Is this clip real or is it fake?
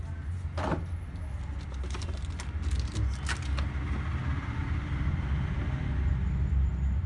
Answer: real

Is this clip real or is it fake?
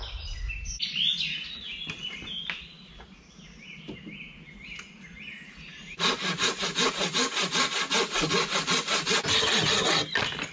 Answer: real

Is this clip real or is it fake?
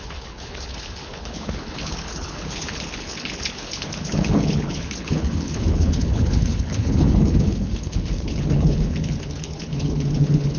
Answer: fake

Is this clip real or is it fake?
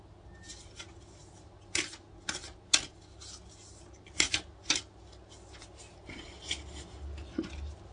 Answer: real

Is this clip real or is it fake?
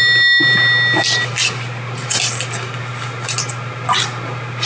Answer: real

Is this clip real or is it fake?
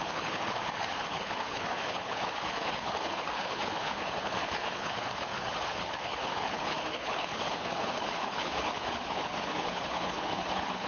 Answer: fake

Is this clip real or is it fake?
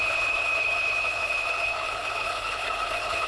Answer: fake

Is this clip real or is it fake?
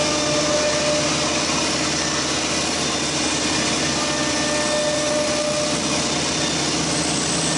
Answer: real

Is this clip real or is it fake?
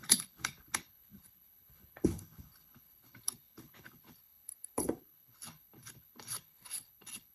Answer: fake